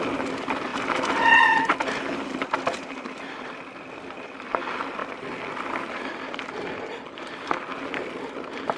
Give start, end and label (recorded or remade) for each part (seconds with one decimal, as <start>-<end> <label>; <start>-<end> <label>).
0.0-8.8 recorded